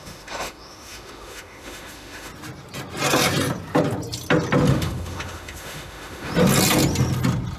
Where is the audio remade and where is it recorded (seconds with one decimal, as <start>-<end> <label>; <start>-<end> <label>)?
0.0-2.3 remade; 2.3-4.7 recorded; 4.7-6.3 remade; 6.3-7.6 recorded